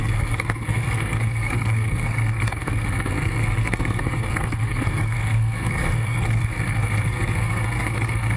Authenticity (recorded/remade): remade